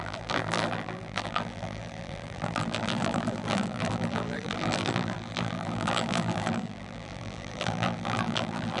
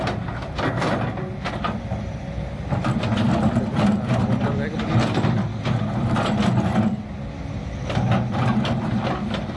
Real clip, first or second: second